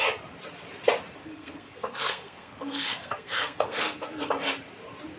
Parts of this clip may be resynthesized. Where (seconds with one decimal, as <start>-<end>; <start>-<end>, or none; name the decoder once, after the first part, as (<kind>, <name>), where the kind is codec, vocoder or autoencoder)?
1.2-4.3 (codec, SNAC)